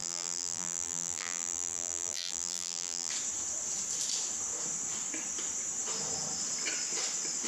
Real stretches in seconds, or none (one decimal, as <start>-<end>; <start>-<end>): 3.1-7.5